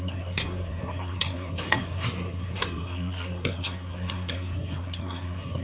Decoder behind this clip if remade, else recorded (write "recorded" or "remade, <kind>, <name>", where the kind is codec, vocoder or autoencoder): remade, codec, SNAC